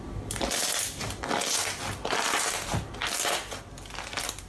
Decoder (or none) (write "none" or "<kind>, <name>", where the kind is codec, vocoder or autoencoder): none